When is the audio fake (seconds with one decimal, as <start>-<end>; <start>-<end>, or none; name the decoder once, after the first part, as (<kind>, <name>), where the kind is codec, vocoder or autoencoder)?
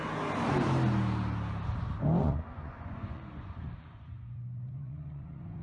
2.2-5.6 (vocoder, Vocos)